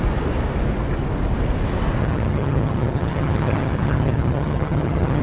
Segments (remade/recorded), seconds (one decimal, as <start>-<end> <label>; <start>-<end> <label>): 0.0-2.0 recorded; 2.0-5.2 remade